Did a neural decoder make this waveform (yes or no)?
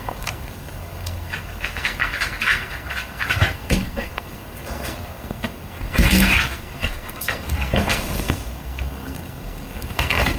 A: yes